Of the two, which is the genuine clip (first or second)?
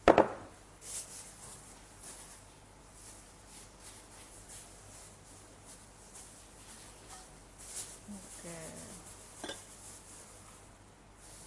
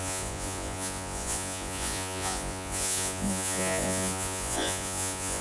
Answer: first